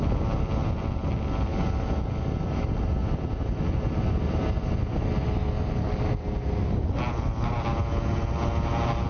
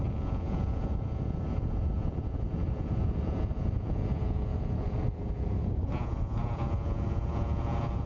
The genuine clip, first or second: first